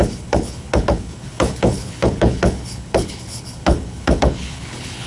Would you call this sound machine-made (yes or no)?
yes